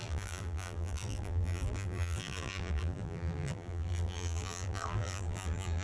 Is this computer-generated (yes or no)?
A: yes